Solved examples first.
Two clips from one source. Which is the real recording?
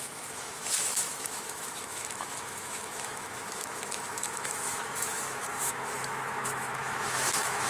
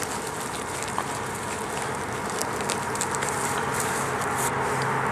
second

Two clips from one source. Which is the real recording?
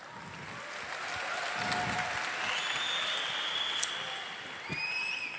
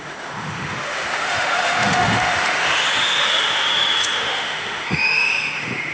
first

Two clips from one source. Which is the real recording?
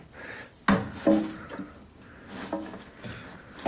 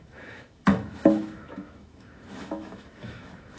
first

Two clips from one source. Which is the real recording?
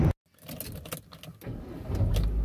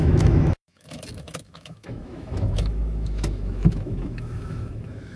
first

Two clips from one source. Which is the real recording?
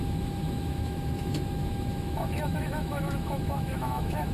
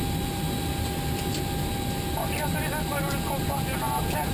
second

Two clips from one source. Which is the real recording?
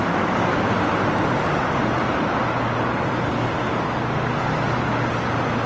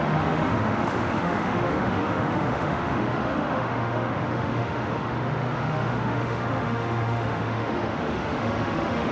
first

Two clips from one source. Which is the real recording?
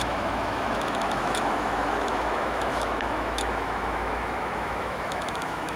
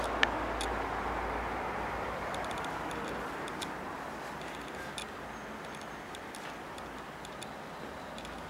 second